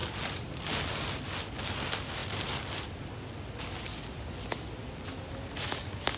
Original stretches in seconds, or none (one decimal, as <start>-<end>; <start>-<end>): 0.0-6.2